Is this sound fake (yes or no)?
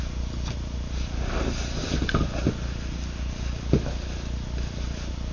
no